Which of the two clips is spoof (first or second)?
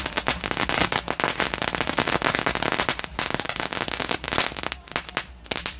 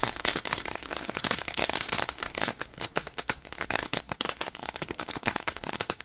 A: second